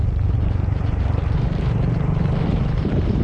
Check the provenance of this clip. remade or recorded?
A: remade